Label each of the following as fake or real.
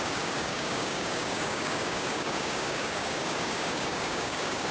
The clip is fake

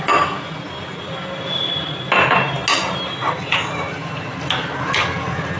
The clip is real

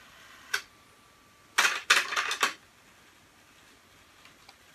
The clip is real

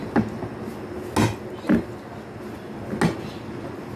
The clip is real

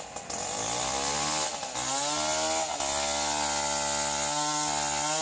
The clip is real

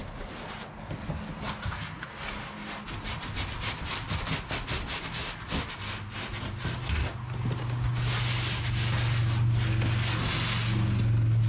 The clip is real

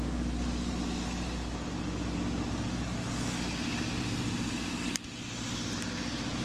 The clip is real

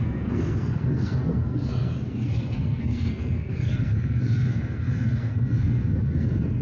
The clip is fake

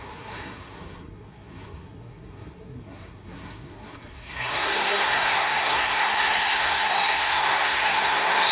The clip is fake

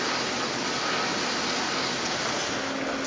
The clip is real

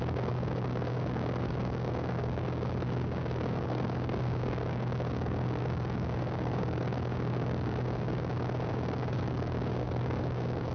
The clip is fake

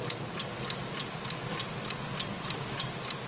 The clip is real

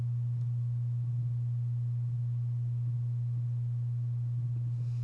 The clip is real